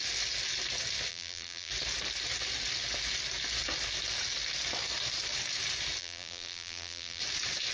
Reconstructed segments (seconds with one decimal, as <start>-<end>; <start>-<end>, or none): 1.1-1.7; 6.0-7.2